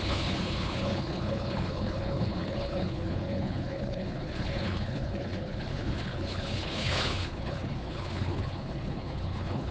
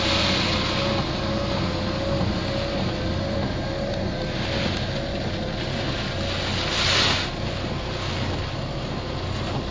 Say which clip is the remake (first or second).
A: first